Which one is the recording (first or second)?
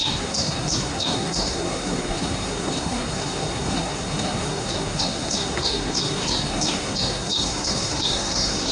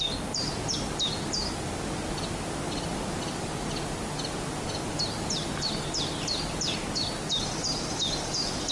second